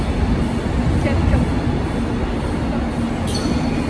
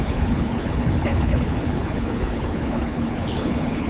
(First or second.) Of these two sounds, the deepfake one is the second